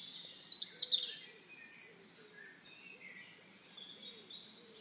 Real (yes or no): yes